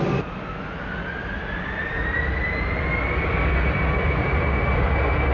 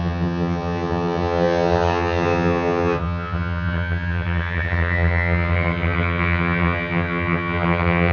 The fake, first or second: second